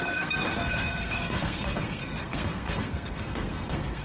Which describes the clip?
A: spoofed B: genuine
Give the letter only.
A